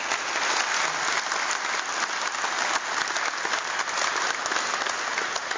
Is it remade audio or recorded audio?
recorded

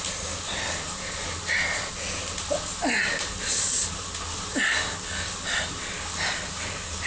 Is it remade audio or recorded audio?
recorded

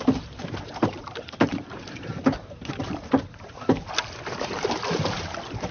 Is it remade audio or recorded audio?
remade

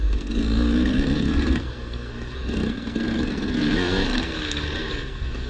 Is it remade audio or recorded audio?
remade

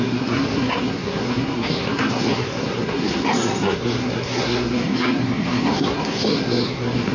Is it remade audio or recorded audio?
remade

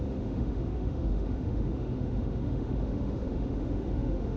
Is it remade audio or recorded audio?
remade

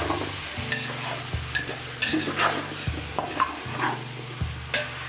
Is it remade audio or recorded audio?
recorded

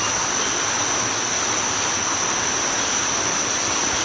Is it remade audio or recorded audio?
recorded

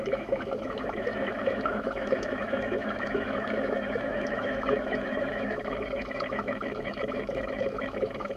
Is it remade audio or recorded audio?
remade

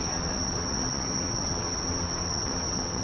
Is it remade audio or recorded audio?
remade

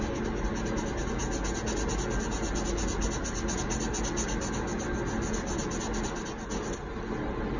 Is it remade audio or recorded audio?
recorded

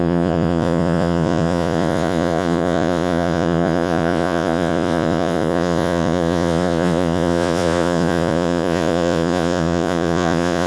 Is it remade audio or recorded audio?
remade